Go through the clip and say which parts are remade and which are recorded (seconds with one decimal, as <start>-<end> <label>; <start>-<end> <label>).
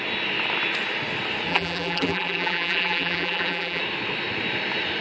0.0-1.5 recorded; 1.5-3.8 remade; 3.8-5.0 recorded